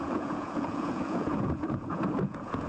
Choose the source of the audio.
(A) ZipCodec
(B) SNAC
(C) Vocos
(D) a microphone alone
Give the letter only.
C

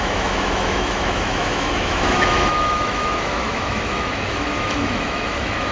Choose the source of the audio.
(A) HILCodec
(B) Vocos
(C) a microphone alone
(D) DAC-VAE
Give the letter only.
D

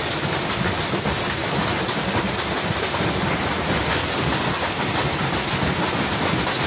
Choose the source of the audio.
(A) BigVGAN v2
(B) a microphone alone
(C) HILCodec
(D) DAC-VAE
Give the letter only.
B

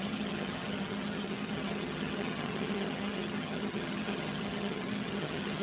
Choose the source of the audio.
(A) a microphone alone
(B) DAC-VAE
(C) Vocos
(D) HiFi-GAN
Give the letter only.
D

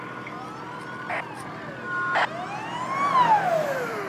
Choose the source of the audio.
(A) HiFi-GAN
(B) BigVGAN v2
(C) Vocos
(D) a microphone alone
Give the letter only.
D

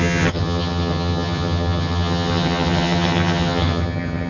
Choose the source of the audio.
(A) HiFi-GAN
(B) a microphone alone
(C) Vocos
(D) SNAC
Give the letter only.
A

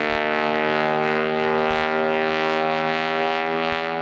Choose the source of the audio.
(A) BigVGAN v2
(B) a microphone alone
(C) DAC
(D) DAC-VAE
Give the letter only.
D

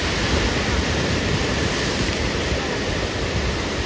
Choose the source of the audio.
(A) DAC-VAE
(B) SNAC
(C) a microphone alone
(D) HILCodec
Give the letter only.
C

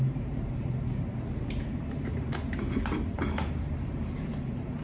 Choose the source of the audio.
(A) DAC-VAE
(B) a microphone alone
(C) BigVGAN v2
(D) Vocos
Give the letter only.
C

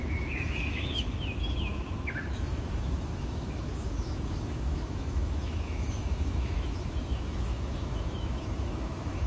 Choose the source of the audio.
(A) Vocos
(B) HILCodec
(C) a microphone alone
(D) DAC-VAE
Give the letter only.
D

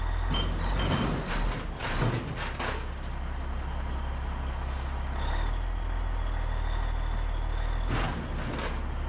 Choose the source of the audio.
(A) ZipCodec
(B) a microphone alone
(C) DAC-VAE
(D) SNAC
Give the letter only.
B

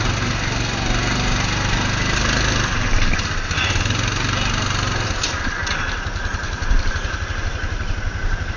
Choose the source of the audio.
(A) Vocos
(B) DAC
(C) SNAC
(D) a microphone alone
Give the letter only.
D